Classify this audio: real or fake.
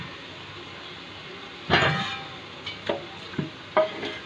real